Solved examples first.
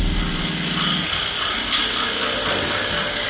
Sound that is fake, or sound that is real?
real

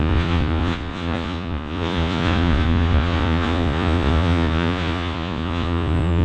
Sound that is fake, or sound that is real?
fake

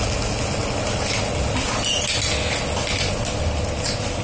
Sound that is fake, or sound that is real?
real